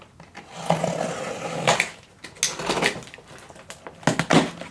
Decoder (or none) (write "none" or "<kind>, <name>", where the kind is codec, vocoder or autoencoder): none